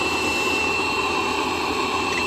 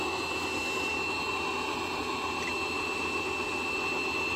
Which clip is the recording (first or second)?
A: second